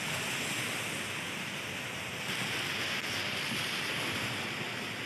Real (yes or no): yes